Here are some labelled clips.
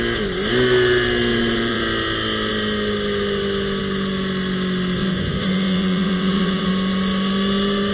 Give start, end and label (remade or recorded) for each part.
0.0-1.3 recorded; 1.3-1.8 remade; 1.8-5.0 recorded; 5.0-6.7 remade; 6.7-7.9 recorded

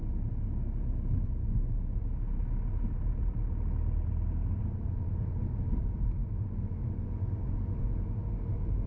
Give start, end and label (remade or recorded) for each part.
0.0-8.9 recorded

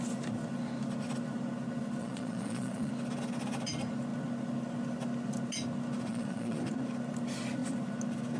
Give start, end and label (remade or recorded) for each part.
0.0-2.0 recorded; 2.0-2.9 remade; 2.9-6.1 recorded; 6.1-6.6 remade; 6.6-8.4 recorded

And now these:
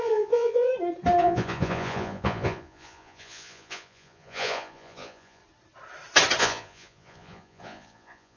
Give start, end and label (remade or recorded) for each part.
0.0-0.7 remade; 0.7-1.2 recorded; 1.2-5.4 remade; 5.4-6.4 recorded; 6.4-8.4 remade

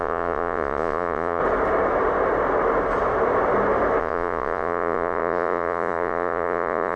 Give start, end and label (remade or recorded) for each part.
0.0-1.4 remade; 1.4-4.0 recorded; 4.0-7.0 remade

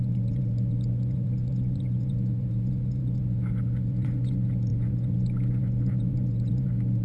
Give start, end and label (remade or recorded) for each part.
0.0-7.0 remade